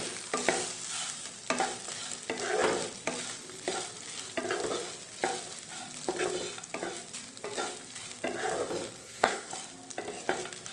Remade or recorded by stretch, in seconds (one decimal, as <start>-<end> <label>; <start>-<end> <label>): 0.0-9.0 recorded; 9.0-9.5 remade; 9.5-10.7 recorded